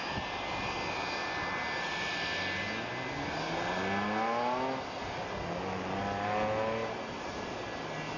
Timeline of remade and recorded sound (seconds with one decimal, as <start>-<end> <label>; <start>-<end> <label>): 0.0-8.2 recorded